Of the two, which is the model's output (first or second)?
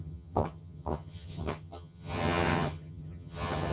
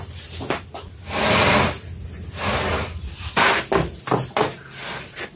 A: first